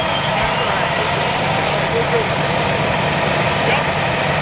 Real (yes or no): yes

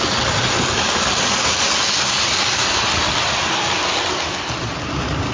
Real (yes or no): yes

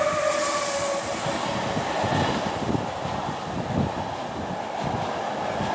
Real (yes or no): yes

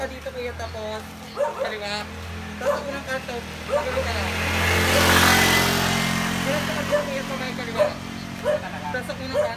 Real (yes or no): yes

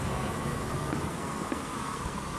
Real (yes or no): no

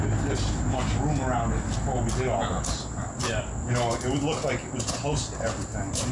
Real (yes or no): yes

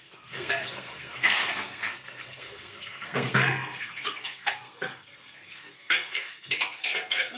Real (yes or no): no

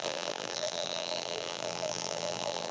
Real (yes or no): no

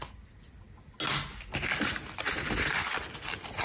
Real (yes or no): yes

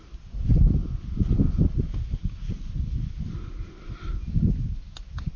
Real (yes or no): yes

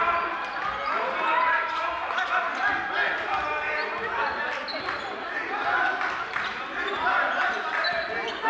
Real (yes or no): yes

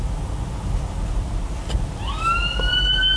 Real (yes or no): yes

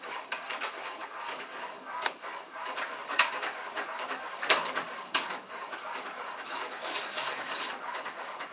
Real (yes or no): no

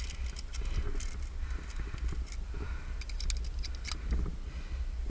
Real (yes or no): yes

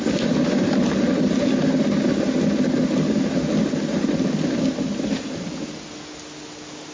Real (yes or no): yes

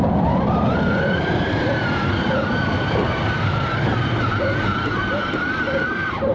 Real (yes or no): no